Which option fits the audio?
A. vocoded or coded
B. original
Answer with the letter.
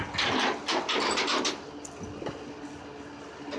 B